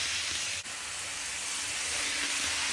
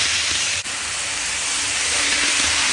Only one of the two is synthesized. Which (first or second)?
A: second